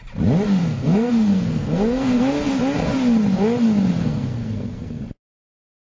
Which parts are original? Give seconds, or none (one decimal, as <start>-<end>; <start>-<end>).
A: 0.0-0.6; 2.6-4.0; 5.0-5.9